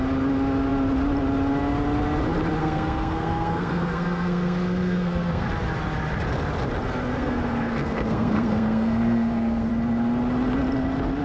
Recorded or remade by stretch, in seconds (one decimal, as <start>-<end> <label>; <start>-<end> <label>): 0.0-2.6 recorded; 2.6-5.5 remade; 5.5-7.1 recorded; 7.1-9.7 remade; 9.7-11.2 recorded